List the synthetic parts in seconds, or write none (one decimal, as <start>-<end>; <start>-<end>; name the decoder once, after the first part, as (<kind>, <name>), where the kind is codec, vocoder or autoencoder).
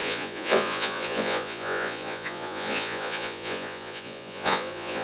0.0-5.0 (vocoder, Vocos)